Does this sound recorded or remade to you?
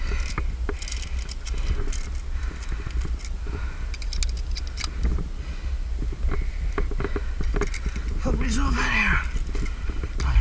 recorded